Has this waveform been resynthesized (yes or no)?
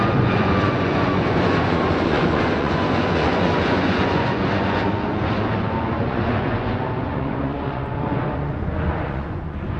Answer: yes